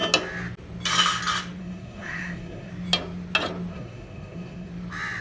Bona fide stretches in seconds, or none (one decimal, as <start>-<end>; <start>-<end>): 0.0-1.6; 2.7-3.7; 4.7-5.2